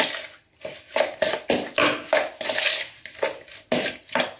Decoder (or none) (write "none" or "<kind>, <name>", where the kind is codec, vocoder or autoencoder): none